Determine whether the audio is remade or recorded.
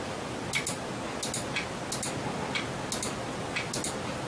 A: recorded